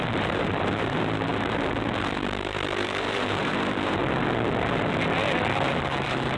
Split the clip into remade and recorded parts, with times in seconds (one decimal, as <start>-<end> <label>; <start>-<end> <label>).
0.0-4.0 remade; 4.0-5.7 recorded; 5.7-6.4 remade